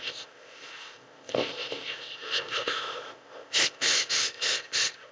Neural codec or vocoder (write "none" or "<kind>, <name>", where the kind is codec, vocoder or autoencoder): codec, ZipCodec